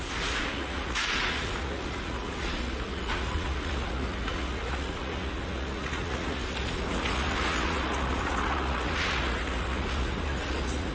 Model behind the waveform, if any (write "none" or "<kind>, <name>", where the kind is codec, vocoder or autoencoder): vocoder, Vocos